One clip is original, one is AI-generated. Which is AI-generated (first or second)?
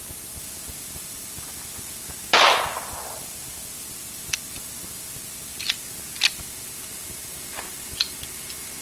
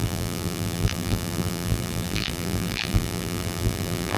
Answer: second